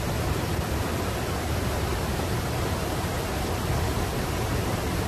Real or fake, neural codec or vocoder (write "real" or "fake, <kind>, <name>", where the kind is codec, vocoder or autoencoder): real